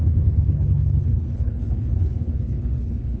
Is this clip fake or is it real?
fake